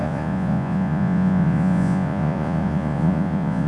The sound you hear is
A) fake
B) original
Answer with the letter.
A